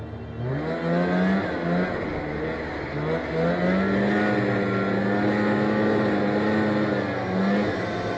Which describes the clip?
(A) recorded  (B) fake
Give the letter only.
A